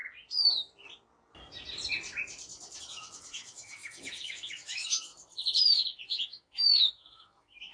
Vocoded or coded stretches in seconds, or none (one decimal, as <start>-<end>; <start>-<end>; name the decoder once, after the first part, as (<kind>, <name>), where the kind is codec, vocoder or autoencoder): 2.8-5.1 (autoencoder, DAC-VAE); 5.7-7.7